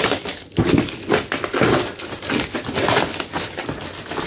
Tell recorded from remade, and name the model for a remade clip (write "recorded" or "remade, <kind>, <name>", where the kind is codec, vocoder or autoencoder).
recorded